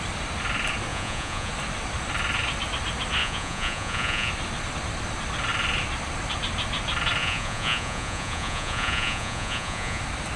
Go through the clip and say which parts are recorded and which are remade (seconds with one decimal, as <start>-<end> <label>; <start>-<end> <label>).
0.0-0.9 recorded; 0.9-1.5 remade; 1.5-3.2 recorded; 3.2-4.3 remade; 4.3-7.2 recorded; 7.2-10.0 remade; 10.0-10.4 recorded